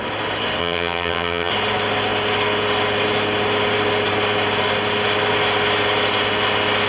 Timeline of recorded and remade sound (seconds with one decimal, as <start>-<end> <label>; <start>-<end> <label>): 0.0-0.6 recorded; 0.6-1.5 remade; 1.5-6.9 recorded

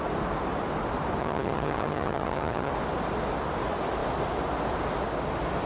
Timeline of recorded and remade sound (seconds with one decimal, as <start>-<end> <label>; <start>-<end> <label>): 0.0-1.2 recorded; 1.2-2.7 remade; 2.7-5.7 recorded

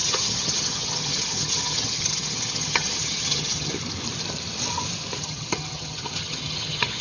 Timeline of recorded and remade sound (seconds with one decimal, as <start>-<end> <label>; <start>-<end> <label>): 0.0-3.7 remade; 3.7-5.2 recorded; 5.2-7.0 remade

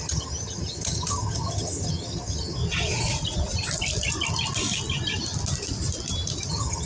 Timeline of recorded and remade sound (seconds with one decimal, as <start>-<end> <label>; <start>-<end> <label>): 0.0-2.6 remade; 2.6-6.5 recorded; 6.5-6.9 remade

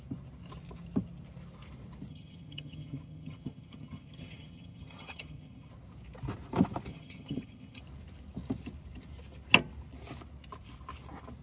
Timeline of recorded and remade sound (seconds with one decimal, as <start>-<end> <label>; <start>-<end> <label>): 0.0-2.1 recorded; 2.1-5.7 remade; 5.7-6.9 recorded; 6.9-7.8 remade; 7.8-11.4 recorded

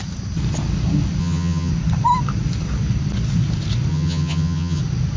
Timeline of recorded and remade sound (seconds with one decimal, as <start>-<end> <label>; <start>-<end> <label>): 0.0-1.2 recorded; 1.2-1.7 remade; 1.7-3.9 recorded; 3.9-4.8 remade; 4.8-5.2 recorded

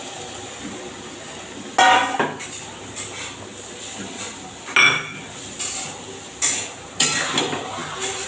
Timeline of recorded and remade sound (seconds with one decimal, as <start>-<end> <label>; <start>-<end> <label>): 0.0-8.3 recorded

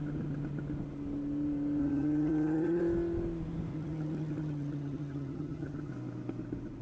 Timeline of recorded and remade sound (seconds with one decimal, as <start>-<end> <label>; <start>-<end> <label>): 0.0-1.8 recorded; 1.8-2.8 remade; 2.8-3.7 recorded; 3.7-5.9 remade; 5.9-6.8 recorded